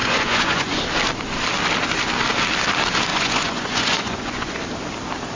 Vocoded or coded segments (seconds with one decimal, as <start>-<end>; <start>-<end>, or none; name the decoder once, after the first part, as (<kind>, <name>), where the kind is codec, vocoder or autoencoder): 0.0-0.8 (vocoder, Vocos); 3.1-4.6